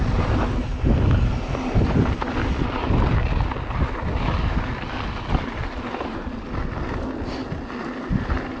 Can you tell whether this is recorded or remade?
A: recorded